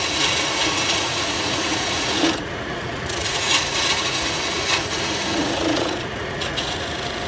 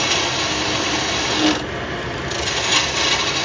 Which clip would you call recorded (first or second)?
second